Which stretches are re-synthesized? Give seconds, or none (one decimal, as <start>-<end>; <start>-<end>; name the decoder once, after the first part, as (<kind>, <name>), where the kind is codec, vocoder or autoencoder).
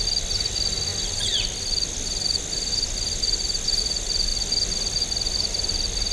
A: none